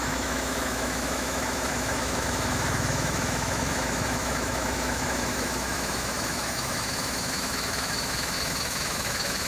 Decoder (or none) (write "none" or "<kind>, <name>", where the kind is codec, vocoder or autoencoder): autoencoder, DAC-VAE